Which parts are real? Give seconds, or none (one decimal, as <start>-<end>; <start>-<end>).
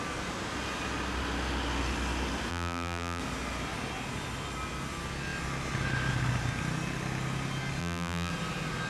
0.0-2.5; 3.2-7.8; 8.3-8.9